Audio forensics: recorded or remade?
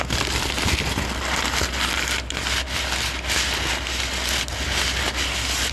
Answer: recorded